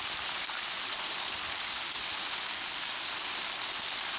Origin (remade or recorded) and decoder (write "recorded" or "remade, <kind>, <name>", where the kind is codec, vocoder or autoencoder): recorded